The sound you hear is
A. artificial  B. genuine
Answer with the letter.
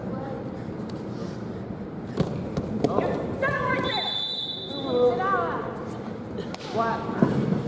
B